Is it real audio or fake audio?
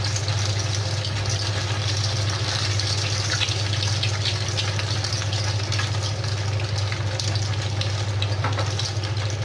real